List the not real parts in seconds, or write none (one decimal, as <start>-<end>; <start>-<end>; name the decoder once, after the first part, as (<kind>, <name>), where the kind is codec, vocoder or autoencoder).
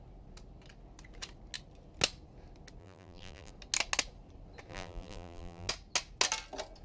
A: 2.8-3.5 (vocoder, BigVGAN v2); 4.7-5.7